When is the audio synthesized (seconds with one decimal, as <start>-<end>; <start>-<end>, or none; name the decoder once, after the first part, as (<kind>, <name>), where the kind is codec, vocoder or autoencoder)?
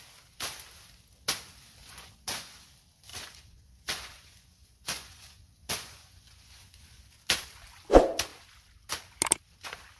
1.8-2.5 (vocoder, Vocos); 3.1-7.1